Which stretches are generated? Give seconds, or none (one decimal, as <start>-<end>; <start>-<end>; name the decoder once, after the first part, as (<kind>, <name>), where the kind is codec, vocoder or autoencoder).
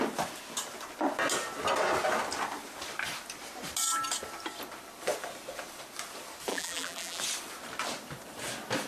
6.5-7.2 (vocoder, BigVGAN v2)